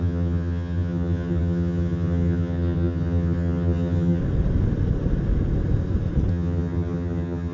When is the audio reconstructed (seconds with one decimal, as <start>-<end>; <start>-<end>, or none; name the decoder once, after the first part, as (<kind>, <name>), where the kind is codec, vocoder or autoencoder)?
0.0-4.2 (vocoder, HiFi-GAN); 6.3-7.5